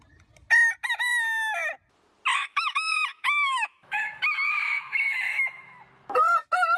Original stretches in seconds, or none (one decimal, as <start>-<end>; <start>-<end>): 0.0-2.5; 5.8-6.8